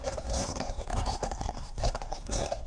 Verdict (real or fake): fake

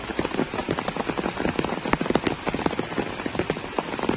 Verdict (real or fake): real